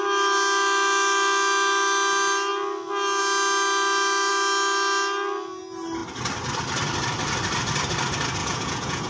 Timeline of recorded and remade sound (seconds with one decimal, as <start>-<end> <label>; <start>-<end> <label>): 0.0-8.4 recorded; 8.4-9.1 remade